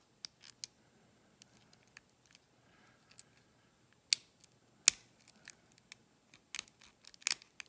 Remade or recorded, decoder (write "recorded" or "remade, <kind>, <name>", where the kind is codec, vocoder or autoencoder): recorded